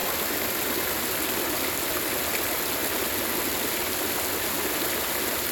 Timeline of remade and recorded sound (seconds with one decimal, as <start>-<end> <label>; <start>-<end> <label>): 0.0-5.5 recorded